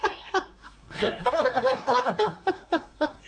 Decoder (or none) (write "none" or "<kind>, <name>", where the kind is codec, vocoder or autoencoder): codec, SNAC